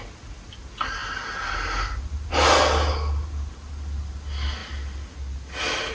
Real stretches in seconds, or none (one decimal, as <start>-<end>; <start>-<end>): 0.0-5.9